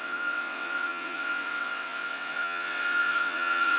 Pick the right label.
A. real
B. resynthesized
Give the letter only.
B